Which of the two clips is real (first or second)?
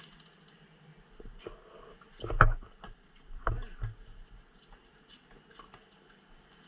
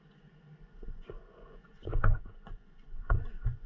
first